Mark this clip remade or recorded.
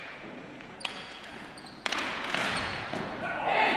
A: remade